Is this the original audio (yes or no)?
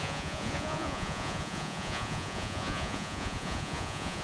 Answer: no